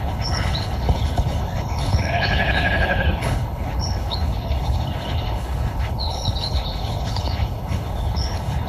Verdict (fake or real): fake